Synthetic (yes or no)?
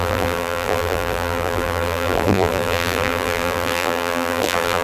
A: yes